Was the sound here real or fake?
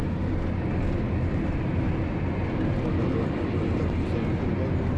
real